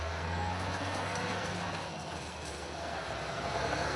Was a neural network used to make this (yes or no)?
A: yes